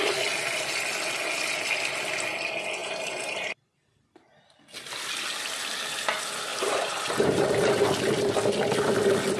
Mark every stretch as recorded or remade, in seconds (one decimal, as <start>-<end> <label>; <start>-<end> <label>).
0.0-2.8 recorded; 2.8-3.5 remade; 3.5-6.5 recorded; 6.5-7.8 remade; 7.8-9.4 recorded